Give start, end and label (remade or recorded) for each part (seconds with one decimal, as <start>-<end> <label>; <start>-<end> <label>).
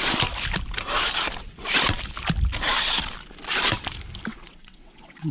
0.0-4.3 recorded; 4.3-5.3 remade